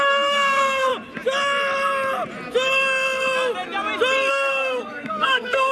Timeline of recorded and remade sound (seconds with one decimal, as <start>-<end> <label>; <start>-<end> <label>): 0.0-0.9 remade; 0.9-4.3 recorded; 4.3-5.7 remade